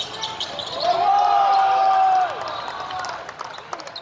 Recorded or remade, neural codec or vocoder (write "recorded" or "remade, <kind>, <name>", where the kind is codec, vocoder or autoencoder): recorded